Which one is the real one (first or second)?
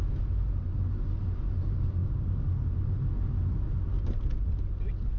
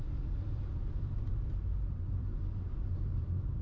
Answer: first